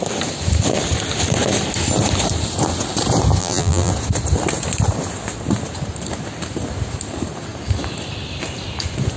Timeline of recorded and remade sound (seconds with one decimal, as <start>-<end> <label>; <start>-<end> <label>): 0.0-3.4 recorded; 3.4-3.9 remade; 3.9-9.2 recorded